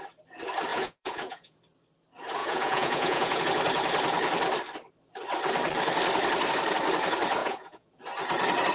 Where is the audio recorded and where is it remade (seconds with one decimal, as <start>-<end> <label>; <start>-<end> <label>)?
0.0-0.7 recorded; 0.7-1.6 remade; 1.6-2.4 recorded; 2.4-3.4 remade; 3.4-7.4 recorded; 7.4-7.9 remade; 7.9-8.7 recorded